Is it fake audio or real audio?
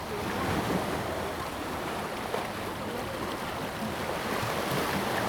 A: real